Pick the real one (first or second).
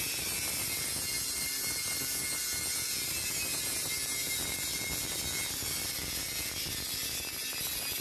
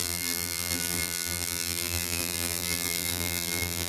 first